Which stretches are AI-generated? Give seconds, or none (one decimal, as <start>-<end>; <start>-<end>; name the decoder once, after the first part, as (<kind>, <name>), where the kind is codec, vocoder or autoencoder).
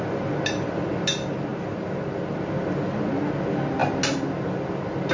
none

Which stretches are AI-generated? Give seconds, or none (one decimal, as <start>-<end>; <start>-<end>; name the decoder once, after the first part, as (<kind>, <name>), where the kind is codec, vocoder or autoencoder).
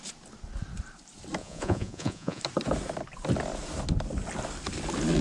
1.4-2.4 (vocoder, Vocos)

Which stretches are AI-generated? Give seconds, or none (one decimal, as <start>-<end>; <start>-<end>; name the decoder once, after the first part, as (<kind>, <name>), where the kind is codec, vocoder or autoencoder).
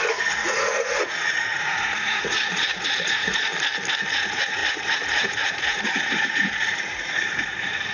0.0-3.5 (vocoder, Vocos); 4.1-7.9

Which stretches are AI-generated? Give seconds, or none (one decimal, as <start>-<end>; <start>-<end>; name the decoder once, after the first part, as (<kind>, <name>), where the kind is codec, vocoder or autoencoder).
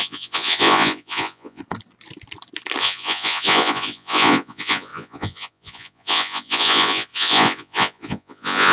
0.0-1.6 (vocoder, Vocos); 2.8-8.7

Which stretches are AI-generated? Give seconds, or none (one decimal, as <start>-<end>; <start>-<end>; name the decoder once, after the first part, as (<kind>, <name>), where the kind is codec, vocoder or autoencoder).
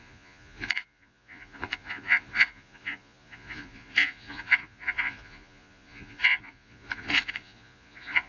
0.0-8.3 (vocoder, Vocos)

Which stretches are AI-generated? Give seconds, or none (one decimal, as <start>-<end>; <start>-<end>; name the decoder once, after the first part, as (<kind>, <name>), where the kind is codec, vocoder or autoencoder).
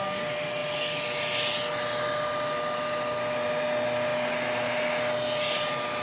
none